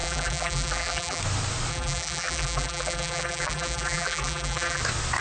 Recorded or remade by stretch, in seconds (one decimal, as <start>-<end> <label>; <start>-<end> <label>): 0.0-1.2 remade; 1.2-1.7 recorded; 1.7-4.8 remade; 4.8-5.2 recorded